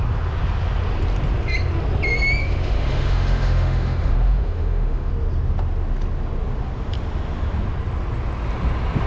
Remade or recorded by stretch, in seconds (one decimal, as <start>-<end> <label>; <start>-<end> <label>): 0.0-2.4 recorded; 2.4-5.1 remade; 5.1-9.1 recorded